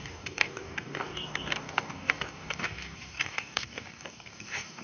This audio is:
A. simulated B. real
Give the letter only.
A